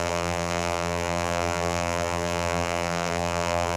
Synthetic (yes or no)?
yes